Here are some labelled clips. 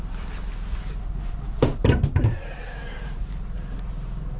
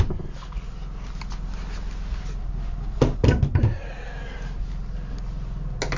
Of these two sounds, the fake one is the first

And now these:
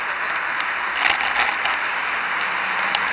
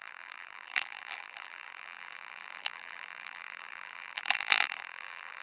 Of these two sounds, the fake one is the second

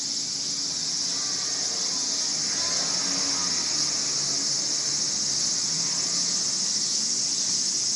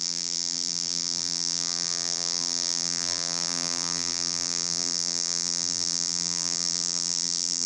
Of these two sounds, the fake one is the second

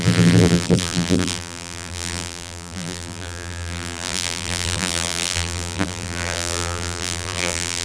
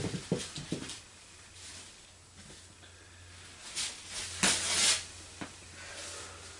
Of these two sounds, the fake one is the first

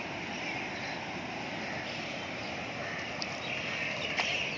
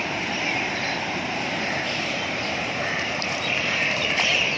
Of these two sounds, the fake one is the second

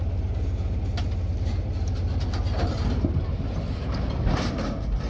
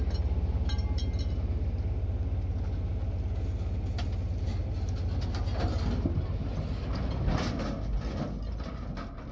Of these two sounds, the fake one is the first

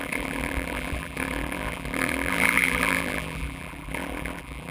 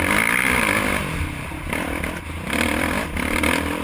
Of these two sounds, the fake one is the first